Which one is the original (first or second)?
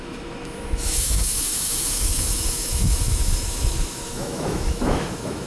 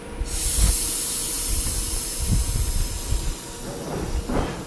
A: second